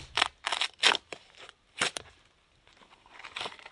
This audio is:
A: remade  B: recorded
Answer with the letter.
B